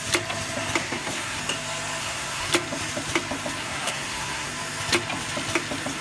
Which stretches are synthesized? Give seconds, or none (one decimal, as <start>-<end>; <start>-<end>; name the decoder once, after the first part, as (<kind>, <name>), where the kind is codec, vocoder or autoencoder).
0.8-1.4 (codec, SNAC); 2.0-2.5; 3.6-4.5